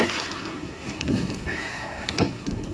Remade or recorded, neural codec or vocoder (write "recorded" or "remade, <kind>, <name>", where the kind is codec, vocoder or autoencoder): remade, codec, SNAC